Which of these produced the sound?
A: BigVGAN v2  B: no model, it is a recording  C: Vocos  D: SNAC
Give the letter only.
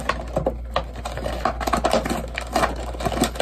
B